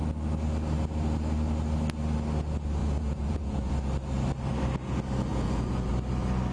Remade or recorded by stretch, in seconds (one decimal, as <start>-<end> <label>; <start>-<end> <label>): 0.0-2.8 recorded; 2.8-3.7 remade; 3.7-5.3 recorded; 5.3-5.9 remade; 5.9-6.5 recorded